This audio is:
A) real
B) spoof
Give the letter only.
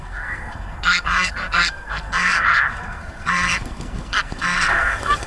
B